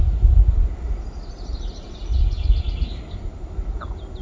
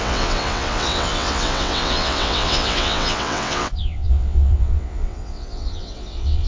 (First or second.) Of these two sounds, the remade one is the second